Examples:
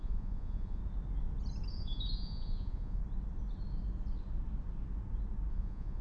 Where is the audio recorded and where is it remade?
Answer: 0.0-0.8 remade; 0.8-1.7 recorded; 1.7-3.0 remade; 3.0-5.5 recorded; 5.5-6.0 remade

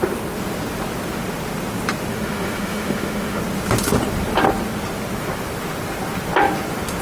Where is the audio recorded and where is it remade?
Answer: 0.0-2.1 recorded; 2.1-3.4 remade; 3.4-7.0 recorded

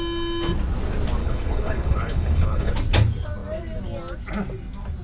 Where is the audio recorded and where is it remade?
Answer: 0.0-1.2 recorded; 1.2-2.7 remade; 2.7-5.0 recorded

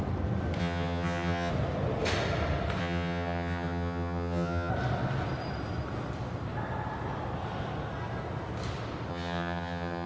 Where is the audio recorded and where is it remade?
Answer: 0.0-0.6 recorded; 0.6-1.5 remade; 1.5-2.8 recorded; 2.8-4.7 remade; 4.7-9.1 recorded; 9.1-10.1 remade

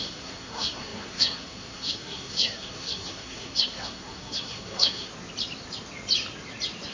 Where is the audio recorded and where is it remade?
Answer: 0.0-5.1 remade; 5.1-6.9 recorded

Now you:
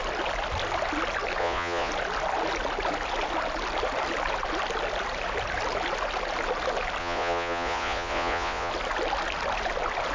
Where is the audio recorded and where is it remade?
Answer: 0.0-1.4 recorded; 1.4-1.9 remade; 1.9-7.0 recorded; 7.0-8.7 remade; 8.7-10.1 recorded

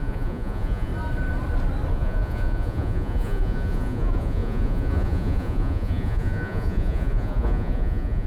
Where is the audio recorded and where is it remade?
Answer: 0.0-0.9 remade; 0.9-1.9 recorded; 1.9-8.3 remade